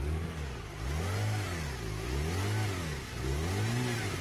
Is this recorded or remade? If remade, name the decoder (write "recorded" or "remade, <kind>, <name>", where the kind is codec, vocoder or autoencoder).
recorded